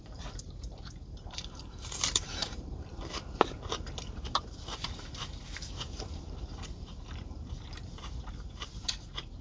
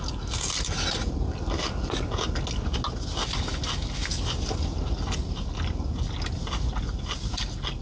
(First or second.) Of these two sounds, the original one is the second